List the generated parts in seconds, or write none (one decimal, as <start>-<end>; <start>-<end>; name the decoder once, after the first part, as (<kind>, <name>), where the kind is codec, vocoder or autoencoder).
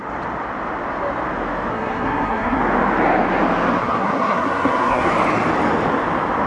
1.7-2.6 (codec, SNAC); 3.8-5.1